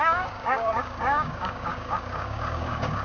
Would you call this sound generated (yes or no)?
yes